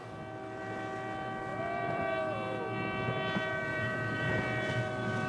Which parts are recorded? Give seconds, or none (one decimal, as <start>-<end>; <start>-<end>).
0.0-1.5; 2.3-3.7; 4.4-5.3